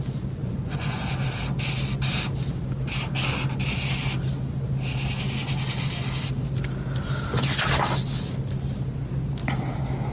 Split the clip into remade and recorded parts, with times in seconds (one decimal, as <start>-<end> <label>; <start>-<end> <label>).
0.0-0.4 recorded; 0.4-1.0 remade; 1.0-10.1 recorded